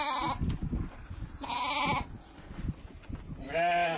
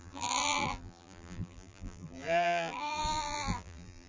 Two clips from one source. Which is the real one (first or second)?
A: first